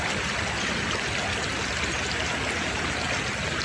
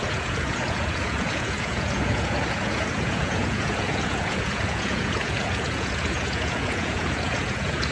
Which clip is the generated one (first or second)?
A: second